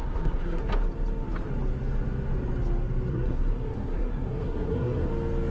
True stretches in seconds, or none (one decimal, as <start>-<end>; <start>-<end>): 0.6-3.1; 5.1-5.5